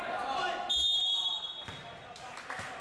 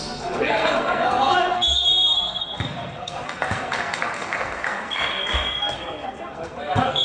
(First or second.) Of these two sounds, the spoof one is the second